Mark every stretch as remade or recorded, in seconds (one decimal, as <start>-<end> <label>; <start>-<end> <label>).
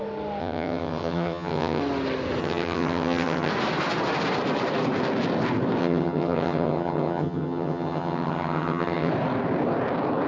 0.0-0.4 recorded; 0.4-1.8 remade; 1.8-2.4 recorded; 2.4-3.5 remade; 3.5-5.8 recorded; 5.8-9.1 remade; 9.1-10.3 recorded